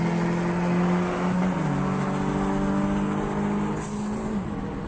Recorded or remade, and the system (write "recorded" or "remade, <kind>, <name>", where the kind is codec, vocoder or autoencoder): recorded